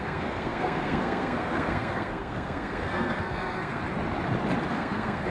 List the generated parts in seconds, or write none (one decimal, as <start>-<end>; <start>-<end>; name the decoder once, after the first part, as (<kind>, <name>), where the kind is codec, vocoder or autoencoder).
0.0-3.8 (codec, SNAC); 4.7-5.3